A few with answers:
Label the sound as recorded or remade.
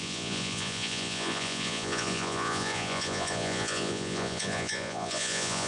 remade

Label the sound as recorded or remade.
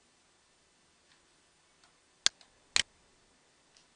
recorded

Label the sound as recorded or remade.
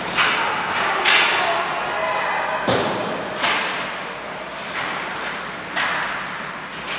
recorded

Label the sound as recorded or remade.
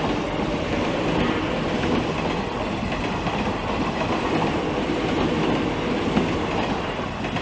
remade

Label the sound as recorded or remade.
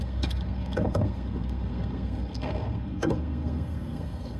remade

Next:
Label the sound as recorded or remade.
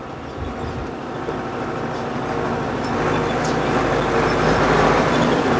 recorded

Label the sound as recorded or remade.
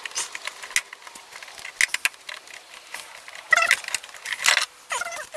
recorded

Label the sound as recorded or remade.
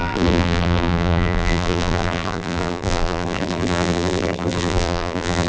remade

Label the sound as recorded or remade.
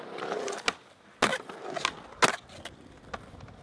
recorded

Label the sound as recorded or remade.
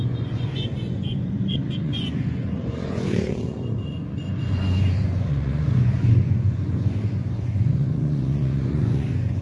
remade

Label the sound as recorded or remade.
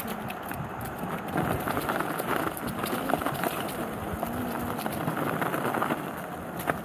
recorded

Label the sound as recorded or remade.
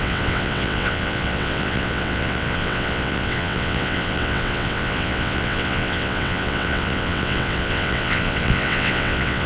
remade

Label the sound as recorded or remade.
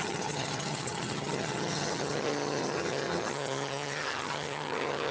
remade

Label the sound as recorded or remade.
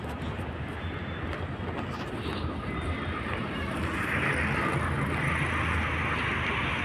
recorded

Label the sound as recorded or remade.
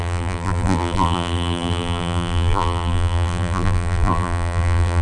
remade